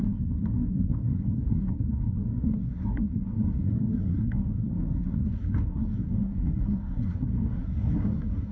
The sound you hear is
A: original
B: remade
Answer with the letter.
B